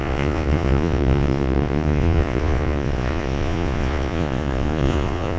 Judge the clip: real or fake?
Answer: fake